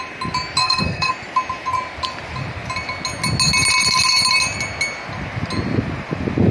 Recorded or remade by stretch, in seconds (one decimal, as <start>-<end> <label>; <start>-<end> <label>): 0.0-0.6 recorded; 0.6-1.1 remade; 1.1-6.5 recorded